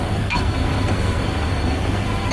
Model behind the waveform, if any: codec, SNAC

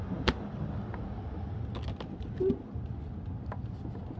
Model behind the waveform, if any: none